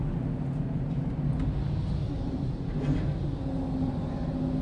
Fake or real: real